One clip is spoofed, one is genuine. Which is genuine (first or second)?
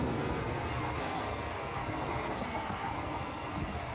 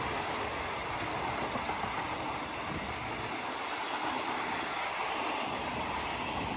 second